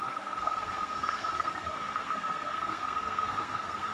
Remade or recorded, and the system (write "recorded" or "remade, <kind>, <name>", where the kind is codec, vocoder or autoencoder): remade, codec, SNAC